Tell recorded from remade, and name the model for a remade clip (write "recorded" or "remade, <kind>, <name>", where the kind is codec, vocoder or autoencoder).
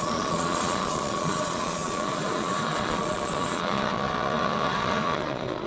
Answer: remade, vocoder, Vocos